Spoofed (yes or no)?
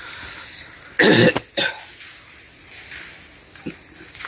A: no